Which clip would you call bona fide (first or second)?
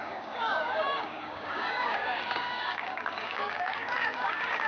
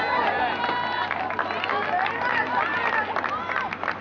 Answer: second